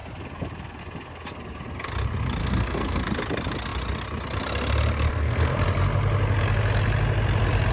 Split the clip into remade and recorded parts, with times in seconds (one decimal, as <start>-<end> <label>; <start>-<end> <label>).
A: 0.0-2.4 recorded; 2.4-3.0 remade; 3.0-5.1 recorded; 5.1-5.6 remade; 5.6-7.7 recorded